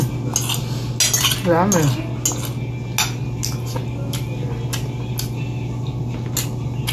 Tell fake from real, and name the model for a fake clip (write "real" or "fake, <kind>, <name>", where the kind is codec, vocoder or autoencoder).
real